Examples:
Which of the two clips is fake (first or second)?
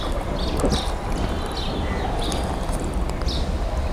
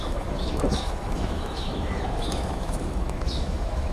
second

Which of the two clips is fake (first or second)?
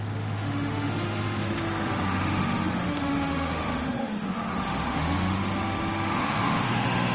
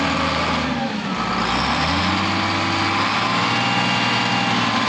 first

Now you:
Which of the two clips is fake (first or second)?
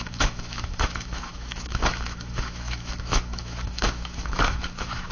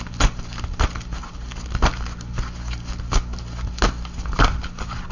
first